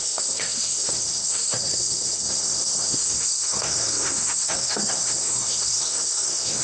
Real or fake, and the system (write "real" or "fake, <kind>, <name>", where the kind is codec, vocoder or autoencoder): fake, codec, SNAC